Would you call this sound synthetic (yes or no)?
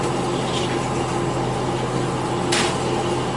no